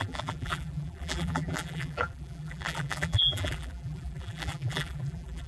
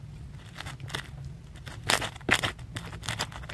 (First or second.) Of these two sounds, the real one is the second